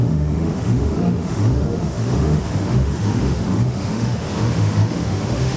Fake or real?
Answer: fake